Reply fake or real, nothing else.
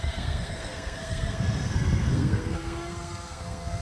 fake